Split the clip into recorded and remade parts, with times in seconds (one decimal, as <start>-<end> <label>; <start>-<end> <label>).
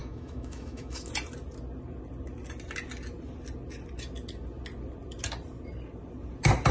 0.0-1.1 remade; 1.1-6.7 recorded